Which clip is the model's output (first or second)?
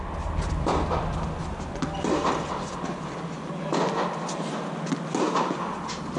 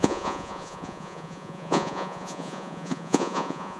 second